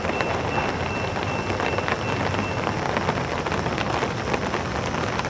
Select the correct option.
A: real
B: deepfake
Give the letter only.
A